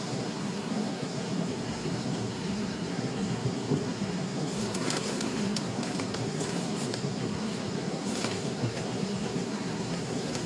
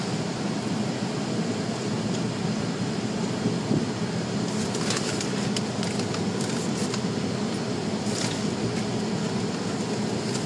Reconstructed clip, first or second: first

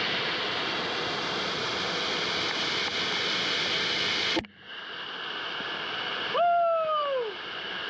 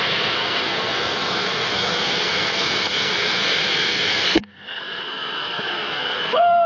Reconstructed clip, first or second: second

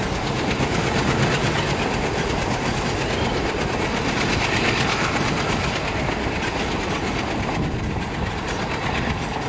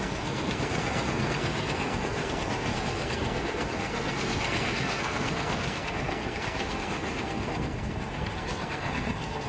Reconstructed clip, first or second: second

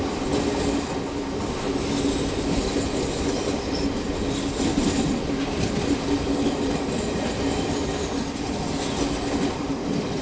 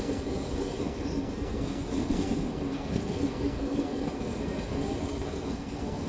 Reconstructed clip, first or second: second